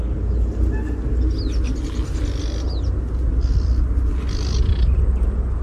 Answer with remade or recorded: recorded